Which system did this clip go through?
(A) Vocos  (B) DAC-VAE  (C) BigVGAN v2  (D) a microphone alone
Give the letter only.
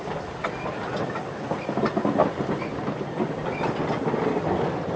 D